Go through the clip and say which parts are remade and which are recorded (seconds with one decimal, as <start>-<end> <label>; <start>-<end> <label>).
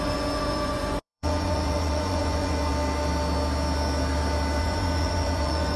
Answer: 0.0-2.7 remade; 2.7-4.6 recorded; 4.6-5.8 remade